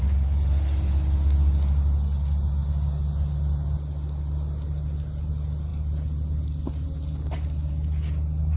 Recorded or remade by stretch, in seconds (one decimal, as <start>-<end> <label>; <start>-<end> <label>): 0.0-8.6 recorded

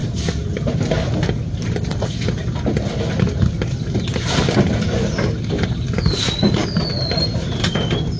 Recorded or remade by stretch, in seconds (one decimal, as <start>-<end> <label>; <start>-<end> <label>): 0.0-8.2 recorded

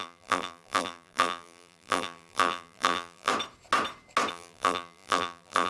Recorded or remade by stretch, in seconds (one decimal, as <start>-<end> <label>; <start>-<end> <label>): 0.0-3.3 remade; 3.3-4.3 recorded; 4.3-5.7 remade

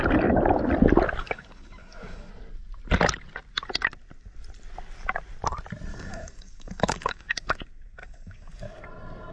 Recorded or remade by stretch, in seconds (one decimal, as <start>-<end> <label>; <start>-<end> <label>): 0.0-1.2 recorded; 1.2-2.3 remade; 2.3-5.9 recorded; 5.9-7.6 remade; 7.6-8.0 recorded; 8.0-8.8 remade; 8.8-9.3 recorded

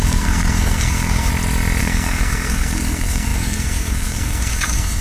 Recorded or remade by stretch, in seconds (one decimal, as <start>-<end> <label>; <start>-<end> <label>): 0.0-1.3 remade; 1.3-1.8 recorded; 1.8-5.0 remade

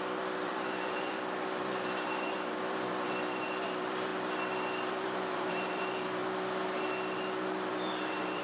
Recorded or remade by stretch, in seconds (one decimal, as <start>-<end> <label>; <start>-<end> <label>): 0.0-4.1 remade; 4.1-4.9 recorded; 4.9-6.2 remade; 6.2-7.7 recorded; 7.7-8.4 remade

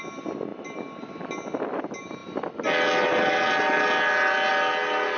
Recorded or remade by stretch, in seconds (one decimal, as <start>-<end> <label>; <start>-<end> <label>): 0.0-5.2 recorded

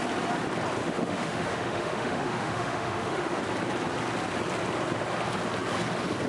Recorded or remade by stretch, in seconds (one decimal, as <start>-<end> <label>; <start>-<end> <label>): 0.0-0.8 recorded; 0.8-3.4 remade; 3.4-6.3 recorded